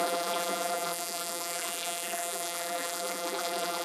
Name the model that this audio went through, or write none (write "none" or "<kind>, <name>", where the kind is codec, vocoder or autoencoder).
vocoder, BigVGAN v2